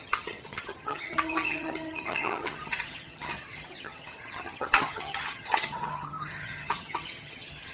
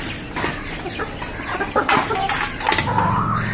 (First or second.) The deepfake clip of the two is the first